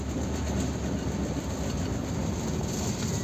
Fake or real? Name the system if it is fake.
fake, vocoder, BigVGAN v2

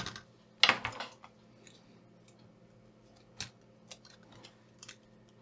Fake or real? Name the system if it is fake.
real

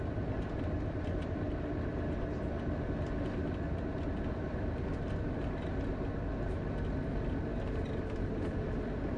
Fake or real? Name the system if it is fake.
real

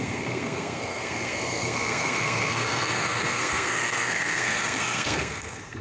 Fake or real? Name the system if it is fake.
fake, codec, SNAC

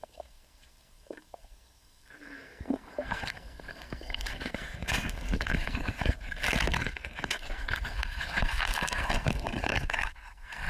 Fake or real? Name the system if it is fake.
fake, codec, SNAC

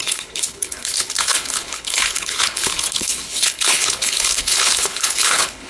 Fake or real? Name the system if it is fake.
fake, codec, HILCodec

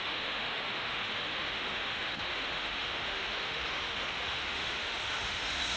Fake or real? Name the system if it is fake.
fake, autoencoder, DAC-VAE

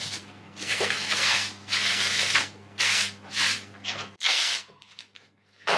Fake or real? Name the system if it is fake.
fake, codec, SNAC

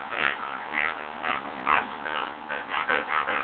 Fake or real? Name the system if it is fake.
fake, vocoder, Vocos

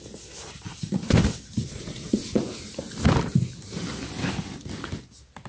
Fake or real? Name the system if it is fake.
real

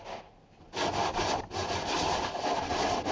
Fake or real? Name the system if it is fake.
real